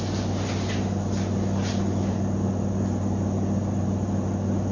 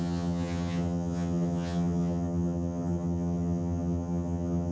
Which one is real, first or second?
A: first